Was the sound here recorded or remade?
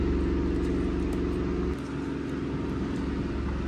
recorded